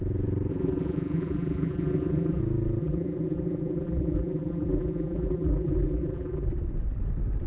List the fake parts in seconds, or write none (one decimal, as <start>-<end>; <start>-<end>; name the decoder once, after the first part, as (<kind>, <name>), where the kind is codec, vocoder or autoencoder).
0.5-2.4 (vocoder, BigVGAN v2); 2.8-6.5